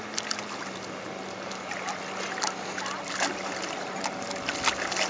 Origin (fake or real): real